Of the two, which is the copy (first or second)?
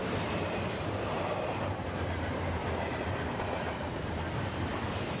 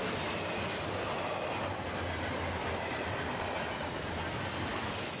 first